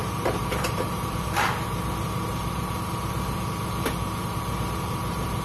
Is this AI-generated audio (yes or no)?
yes